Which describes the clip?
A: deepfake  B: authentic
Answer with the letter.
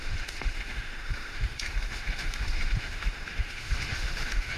A